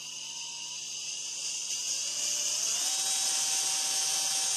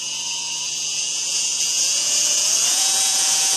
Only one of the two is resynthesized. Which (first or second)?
second